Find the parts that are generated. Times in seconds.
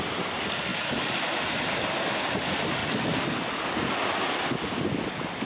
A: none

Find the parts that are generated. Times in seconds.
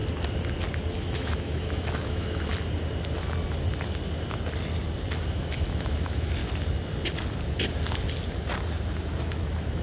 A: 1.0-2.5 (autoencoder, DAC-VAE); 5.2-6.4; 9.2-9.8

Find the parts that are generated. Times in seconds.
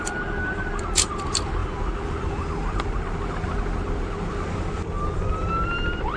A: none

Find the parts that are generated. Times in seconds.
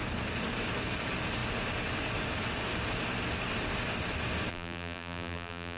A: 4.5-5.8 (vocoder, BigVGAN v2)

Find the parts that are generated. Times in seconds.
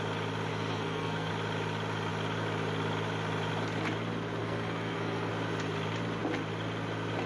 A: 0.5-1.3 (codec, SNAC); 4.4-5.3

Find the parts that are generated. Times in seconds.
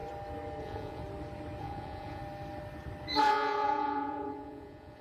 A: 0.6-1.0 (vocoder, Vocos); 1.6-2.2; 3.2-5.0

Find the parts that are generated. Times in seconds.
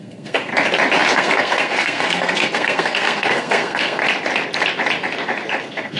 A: 0.0-0.5 (codec, SNAC); 1.1-4.0; 5.6-6.0